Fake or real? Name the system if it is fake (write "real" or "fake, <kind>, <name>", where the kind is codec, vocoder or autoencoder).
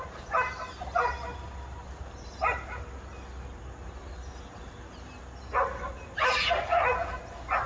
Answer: real